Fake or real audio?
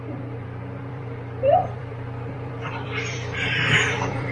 fake